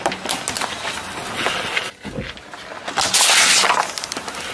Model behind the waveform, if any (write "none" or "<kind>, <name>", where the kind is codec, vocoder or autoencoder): none